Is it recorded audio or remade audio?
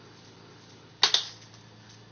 recorded